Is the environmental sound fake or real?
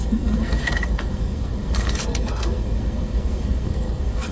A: fake